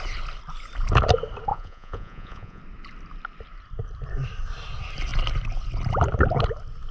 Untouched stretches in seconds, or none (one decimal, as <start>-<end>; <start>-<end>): 0.0-1.5; 2.6-6.9